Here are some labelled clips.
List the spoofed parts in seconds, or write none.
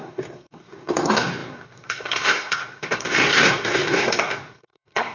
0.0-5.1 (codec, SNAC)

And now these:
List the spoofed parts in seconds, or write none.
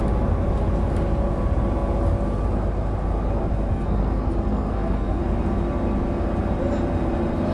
3.7-5.2 (codec, SNAC)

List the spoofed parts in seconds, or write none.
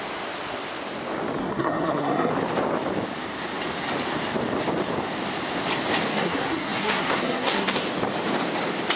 1.4-2.3 (codec, SNAC); 6.1-7.8